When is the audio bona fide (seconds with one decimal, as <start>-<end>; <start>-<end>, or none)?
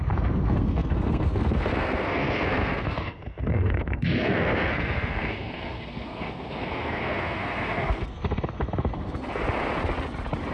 9.4-10.5